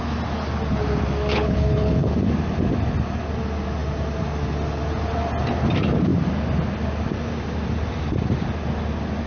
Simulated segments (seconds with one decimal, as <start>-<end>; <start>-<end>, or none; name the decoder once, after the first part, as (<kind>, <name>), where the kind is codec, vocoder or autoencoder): 1.3-2.1 (codec, HILCodec)